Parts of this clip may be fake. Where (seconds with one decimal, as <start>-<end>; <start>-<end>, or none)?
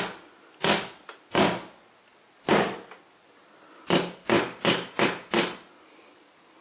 none